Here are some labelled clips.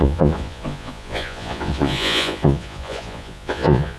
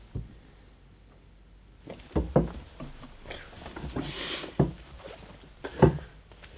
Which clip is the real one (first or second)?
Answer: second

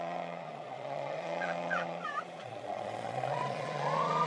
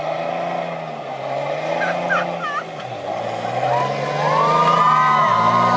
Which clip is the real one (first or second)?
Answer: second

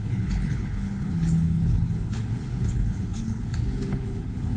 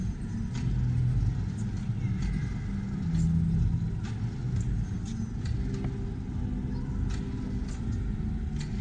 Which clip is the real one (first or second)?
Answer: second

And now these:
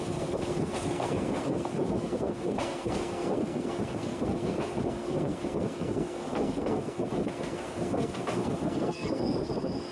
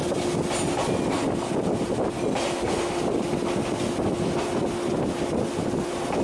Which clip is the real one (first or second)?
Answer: second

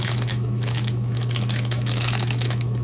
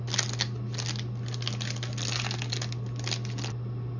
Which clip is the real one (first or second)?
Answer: second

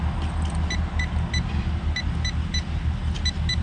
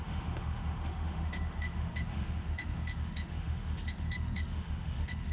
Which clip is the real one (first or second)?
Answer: first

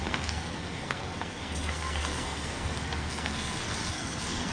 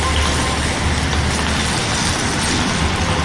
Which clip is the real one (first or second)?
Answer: second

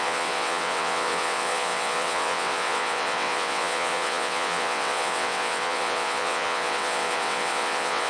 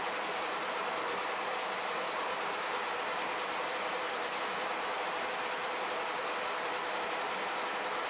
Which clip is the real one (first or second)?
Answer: second